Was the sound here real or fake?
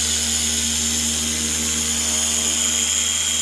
real